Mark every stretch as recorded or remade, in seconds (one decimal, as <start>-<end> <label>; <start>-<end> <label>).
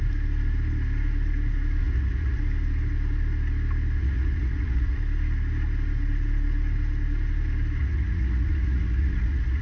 0.0-1.8 recorded; 1.8-2.4 remade; 2.4-4.0 recorded; 4.0-5.0 remade; 5.0-7.8 recorded; 7.8-9.6 remade